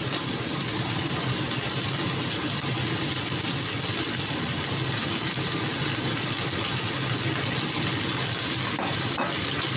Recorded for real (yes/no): yes